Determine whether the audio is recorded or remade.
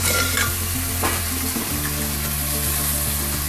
recorded